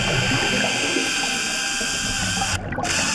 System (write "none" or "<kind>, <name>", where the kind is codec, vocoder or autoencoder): none